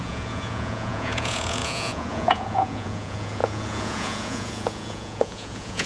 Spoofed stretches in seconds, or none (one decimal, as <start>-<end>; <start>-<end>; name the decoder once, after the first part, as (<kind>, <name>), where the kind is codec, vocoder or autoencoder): 0.0-5.9 (vocoder, Vocos)